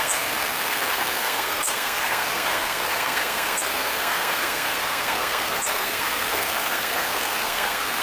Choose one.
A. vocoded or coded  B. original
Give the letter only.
A